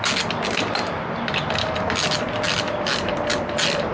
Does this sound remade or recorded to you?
recorded